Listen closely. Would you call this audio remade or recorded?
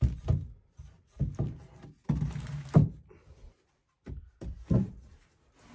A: recorded